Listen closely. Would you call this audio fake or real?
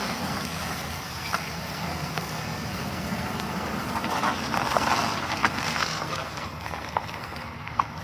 fake